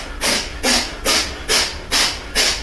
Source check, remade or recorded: recorded